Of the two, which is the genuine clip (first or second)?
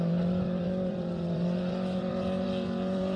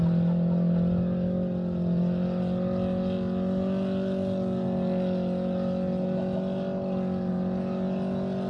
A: second